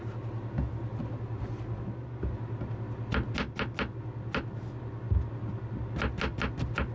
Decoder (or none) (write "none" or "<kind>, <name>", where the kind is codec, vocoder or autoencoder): none